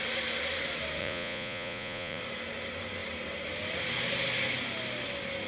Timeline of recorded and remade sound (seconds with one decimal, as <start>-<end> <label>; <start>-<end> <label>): 0.0-1.0 recorded; 1.0-2.2 remade; 2.2-5.5 recorded